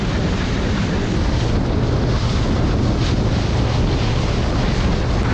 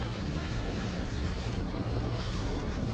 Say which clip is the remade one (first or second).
second